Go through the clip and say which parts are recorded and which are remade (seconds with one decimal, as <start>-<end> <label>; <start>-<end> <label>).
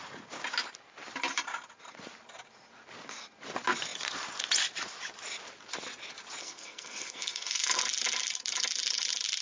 0.0-6.4 recorded; 6.4-7.8 remade; 7.8-9.4 recorded